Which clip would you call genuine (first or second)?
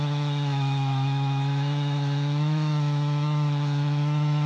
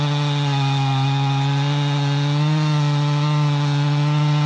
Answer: second